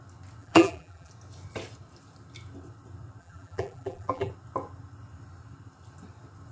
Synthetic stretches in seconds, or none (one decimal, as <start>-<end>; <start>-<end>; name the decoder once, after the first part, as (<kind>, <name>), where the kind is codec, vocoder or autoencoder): 0.4-1.1 (vocoder, BigVGAN v2); 3.2-4.3